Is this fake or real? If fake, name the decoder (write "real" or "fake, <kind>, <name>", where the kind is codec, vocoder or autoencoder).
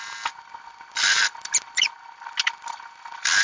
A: real